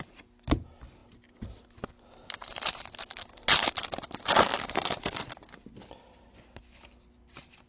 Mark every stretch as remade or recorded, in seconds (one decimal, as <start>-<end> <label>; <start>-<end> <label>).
0.0-7.7 recorded